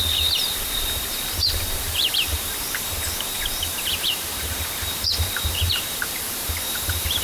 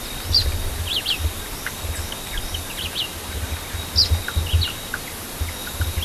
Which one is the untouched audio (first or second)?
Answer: second